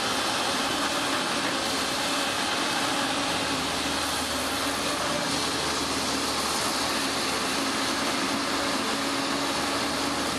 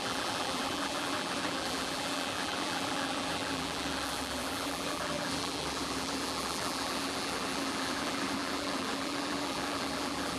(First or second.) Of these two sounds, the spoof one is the second